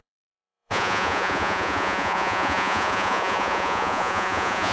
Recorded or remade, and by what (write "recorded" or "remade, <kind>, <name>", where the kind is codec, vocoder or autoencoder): remade, vocoder, Vocos